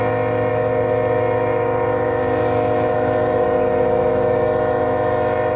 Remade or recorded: recorded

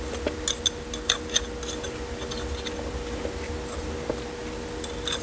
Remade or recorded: recorded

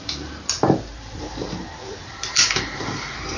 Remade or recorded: remade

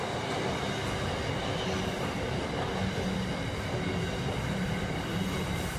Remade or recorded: recorded